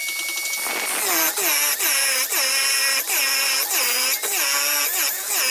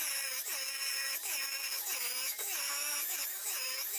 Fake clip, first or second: second